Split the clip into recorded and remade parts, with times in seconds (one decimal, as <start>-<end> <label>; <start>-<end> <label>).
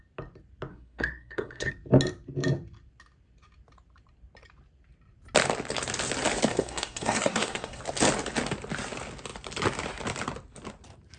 0.0-0.7 recorded; 0.7-1.7 remade; 1.7-6.5 recorded; 6.5-7.8 remade; 7.8-11.2 recorded